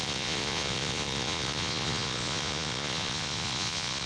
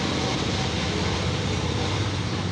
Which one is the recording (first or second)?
second